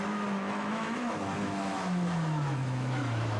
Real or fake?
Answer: fake